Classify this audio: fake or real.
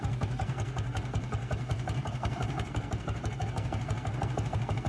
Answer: fake